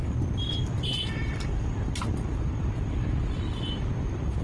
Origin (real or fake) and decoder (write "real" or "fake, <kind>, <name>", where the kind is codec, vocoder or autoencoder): real